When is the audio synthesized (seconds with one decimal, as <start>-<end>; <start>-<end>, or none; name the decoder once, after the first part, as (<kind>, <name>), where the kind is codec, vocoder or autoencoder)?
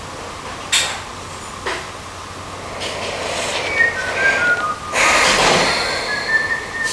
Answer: none